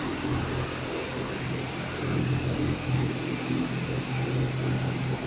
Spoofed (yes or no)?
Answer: no